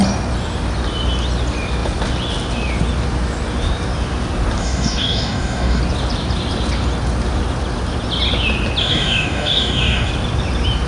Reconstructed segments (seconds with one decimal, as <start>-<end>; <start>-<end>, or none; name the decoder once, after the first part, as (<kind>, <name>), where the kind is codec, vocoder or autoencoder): 4.6-5.8 (codec, DAC); 8.8-10.1